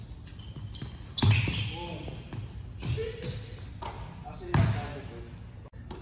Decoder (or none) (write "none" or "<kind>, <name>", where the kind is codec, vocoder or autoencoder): none